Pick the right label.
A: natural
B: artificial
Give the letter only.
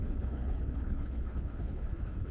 B